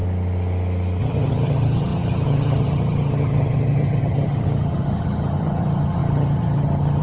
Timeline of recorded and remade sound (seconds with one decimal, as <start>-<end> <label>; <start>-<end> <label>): 0.0-1.0 recorded; 1.0-7.0 remade